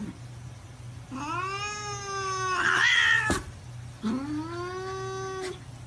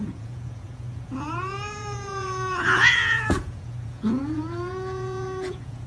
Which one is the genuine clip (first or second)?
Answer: first